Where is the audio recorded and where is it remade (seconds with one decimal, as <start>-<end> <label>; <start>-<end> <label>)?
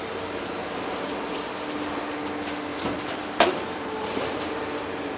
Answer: 0.0-0.6 recorded; 0.6-1.5 remade; 1.5-2.7 recorded; 2.7-4.8 remade; 4.8-5.2 recorded